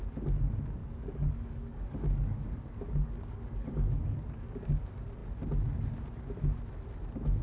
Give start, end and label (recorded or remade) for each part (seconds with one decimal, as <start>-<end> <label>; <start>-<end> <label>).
0.0-0.8 recorded; 0.8-4.8 remade; 4.8-7.4 recorded